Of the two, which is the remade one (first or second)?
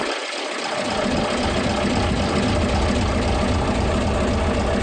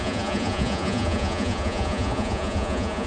second